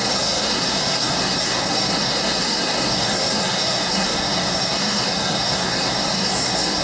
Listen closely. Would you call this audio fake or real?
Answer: fake